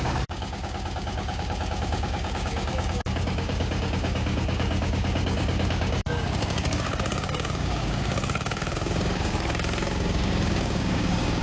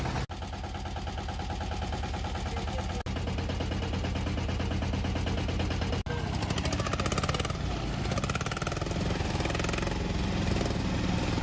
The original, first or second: second